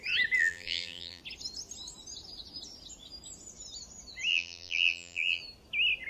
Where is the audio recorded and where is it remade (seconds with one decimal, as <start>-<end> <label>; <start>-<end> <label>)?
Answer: 0.0-0.4 recorded; 0.4-1.2 remade; 1.2-4.3 recorded; 4.3-5.4 remade; 5.4-6.1 recorded